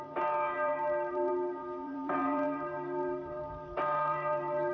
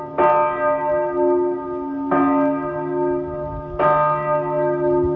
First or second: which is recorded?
second